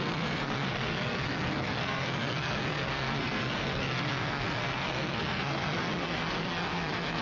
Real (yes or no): no